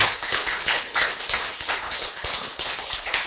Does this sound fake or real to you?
fake